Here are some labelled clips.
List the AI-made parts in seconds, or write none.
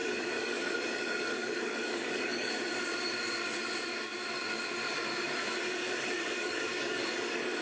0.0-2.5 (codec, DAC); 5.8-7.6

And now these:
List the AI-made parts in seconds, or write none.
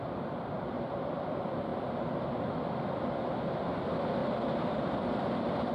0.0-4.2 (vocoder, BigVGAN v2); 5.0-5.7